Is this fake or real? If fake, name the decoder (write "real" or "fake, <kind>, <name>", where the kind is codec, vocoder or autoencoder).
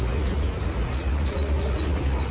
fake, vocoder, Vocos